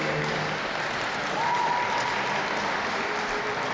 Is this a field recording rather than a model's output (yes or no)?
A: yes